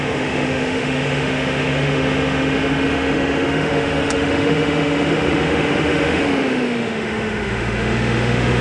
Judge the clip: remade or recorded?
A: remade